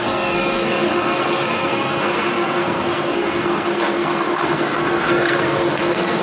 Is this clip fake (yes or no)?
yes